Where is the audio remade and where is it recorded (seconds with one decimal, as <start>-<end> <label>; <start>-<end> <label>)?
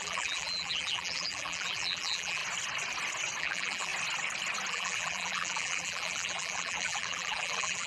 0.0-2.4 remade; 2.4-3.4 recorded; 3.4-3.9 remade; 3.9-4.7 recorded; 4.7-7.9 remade